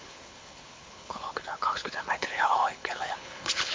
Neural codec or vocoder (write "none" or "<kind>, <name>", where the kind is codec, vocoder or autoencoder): codec, HILCodec